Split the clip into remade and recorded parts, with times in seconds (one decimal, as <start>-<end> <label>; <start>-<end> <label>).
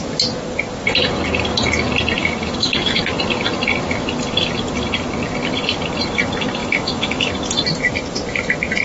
0.0-2.2 recorded; 2.2-3.0 remade; 3.0-6.6 recorded; 6.6-7.3 remade; 7.3-8.8 recorded